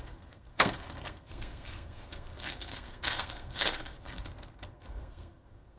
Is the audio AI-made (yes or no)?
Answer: yes